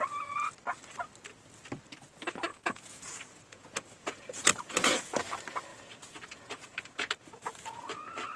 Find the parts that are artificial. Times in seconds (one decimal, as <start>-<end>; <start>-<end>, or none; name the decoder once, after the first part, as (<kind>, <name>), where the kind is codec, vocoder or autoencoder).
2.5-5.3 (vocoder, Vocos); 5.7-7.9